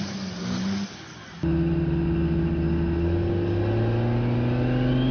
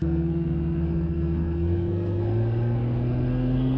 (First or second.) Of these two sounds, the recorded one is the first